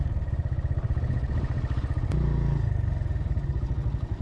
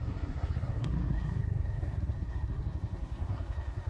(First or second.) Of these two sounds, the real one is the first